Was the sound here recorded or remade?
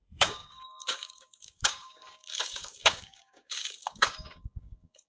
remade